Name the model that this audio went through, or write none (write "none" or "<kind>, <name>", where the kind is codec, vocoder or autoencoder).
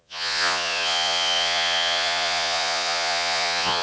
vocoder, Vocos